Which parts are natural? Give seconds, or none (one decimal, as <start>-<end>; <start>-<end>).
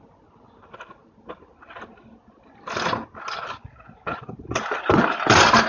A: 0.0-5.7